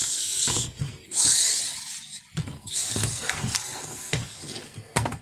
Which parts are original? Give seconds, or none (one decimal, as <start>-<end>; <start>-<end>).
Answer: 1.4-2.4